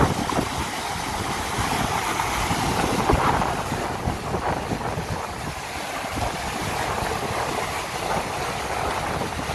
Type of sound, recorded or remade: recorded